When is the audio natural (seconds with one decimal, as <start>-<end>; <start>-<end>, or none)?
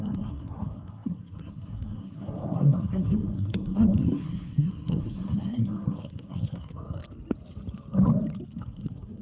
7.0-8.6